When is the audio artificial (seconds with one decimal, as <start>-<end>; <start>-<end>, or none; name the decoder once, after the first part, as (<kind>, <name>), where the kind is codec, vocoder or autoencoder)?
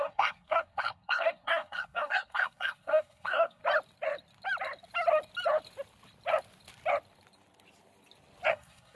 0.0-3.6 (codec, SNAC); 8.5-9.0